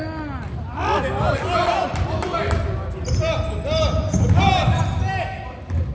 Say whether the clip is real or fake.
real